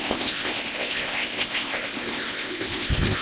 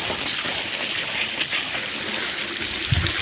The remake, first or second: first